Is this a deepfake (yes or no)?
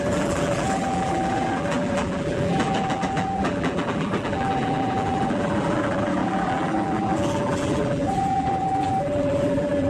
yes